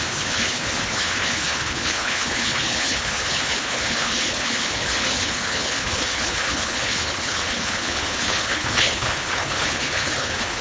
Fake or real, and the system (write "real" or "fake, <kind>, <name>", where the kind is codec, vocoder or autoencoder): fake, codec, HILCodec